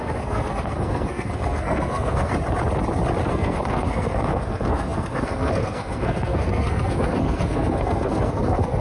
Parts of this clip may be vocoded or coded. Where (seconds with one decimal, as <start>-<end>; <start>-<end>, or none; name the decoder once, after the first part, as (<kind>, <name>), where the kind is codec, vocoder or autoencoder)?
0.0-2.3 (codec, SNAC); 3.3-8.8